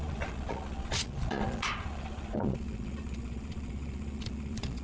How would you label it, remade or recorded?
remade